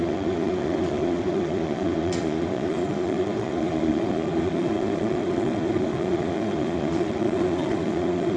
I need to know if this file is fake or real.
fake